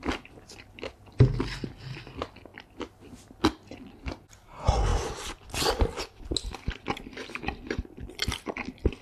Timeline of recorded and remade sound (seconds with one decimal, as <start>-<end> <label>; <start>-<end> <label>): 0.0-9.0 recorded